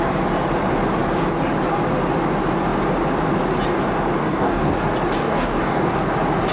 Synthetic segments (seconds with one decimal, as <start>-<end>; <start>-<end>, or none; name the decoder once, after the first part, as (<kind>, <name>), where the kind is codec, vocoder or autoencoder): 4.2-4.7 (codec, DAC); 5.2-6.0